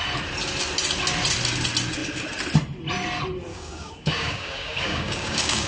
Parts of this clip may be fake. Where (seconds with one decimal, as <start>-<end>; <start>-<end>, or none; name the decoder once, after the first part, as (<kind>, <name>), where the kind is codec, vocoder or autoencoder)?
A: 3.5-5.7 (codec, DAC)